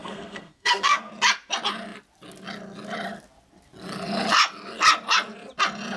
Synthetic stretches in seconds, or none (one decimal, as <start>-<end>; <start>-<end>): 0.0-1.1